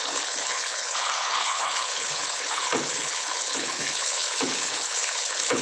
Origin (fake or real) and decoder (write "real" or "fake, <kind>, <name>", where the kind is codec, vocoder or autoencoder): fake, codec, HILCodec